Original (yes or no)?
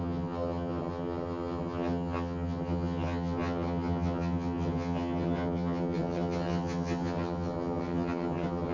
no